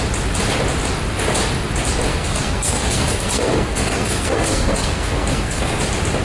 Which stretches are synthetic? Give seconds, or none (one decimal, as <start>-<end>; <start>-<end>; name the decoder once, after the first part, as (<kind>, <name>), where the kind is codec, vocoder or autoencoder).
2.1-5.8 (codec, SNAC)